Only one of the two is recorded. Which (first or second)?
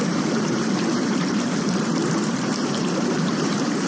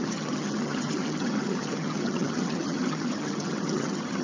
first